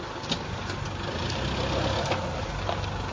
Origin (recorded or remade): recorded